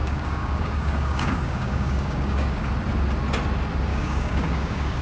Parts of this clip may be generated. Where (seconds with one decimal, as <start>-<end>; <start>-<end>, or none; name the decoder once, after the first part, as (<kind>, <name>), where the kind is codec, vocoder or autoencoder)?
0.0-2.7 (codec, DAC); 3.9-5.0